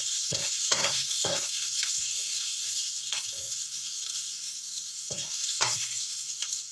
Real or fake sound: fake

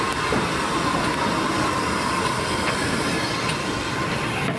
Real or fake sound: real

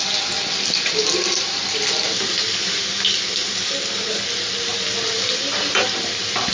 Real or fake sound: real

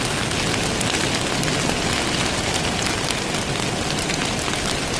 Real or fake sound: real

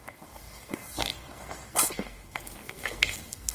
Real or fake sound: fake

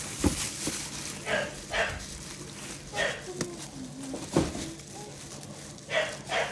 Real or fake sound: real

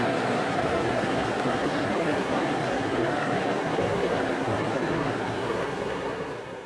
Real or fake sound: fake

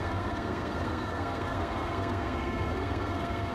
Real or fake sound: fake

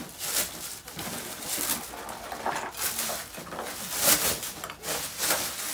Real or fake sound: real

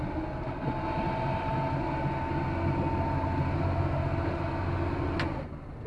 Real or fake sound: real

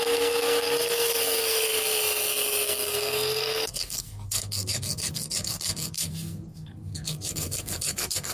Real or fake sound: fake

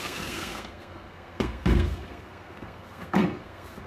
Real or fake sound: fake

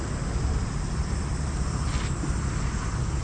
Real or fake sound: real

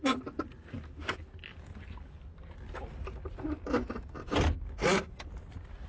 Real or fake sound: real